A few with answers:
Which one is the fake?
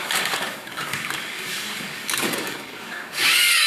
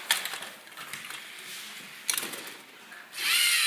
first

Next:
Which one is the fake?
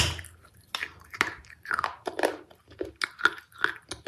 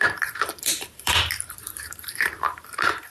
second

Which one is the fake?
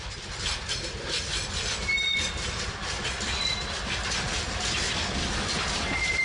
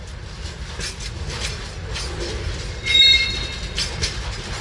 first